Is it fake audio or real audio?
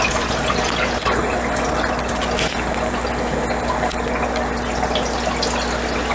real